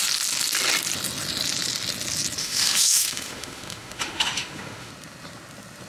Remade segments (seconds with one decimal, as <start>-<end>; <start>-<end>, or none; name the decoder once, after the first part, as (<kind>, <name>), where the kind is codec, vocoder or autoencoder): 2.4-4.9 (autoencoder, DAC-VAE)